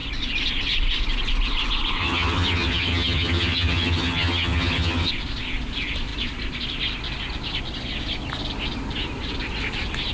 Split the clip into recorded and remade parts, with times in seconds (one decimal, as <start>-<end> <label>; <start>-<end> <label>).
0.0-2.0 recorded; 2.0-5.1 remade; 5.1-10.1 recorded